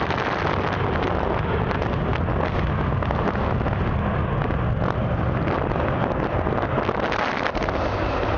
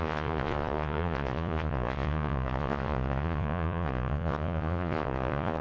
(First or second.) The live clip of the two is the first